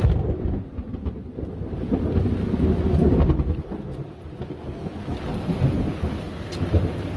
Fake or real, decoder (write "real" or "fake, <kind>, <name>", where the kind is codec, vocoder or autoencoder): real